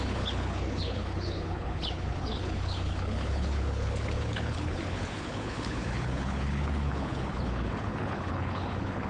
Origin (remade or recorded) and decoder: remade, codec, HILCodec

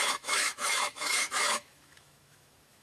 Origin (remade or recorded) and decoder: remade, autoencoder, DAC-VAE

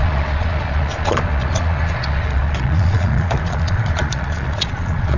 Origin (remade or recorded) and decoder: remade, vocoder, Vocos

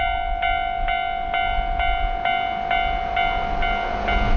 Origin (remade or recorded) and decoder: recorded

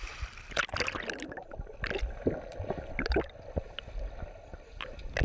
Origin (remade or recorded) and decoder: recorded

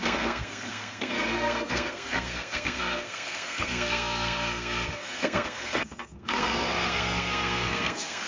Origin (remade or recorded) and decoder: remade, codec, SNAC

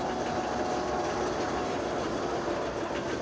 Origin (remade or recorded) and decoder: recorded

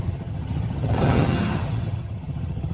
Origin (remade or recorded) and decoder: remade, vocoder, HiFi-GAN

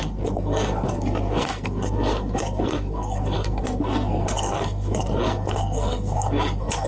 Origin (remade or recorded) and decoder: remade, codec, SNAC